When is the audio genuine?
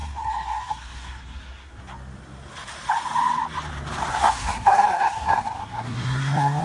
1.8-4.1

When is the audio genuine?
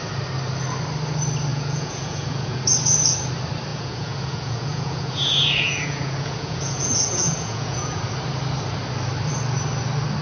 0.0-1.5; 2.6-3.7; 8.0-10.2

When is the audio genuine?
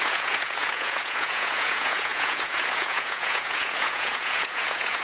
none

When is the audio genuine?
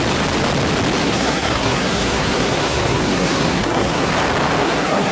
0.0-1.0; 4.1-4.6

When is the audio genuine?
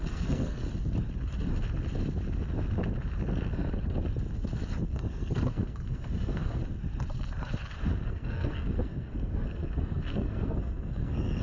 0.6-4.8; 6.6-7.8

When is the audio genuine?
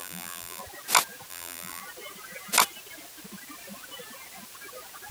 0.6-1.3; 1.8-5.1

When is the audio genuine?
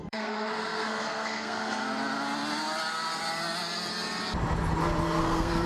1.8-5.2